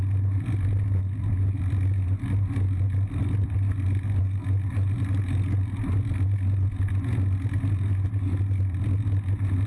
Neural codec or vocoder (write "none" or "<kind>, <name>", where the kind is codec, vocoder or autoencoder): none